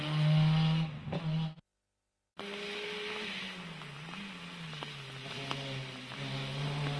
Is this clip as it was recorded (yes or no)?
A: yes